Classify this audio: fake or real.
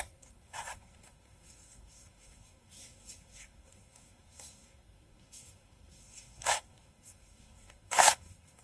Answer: fake